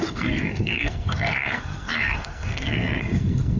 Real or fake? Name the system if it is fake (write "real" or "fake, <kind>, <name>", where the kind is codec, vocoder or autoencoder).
fake, codec, SNAC